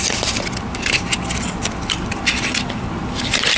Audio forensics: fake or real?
real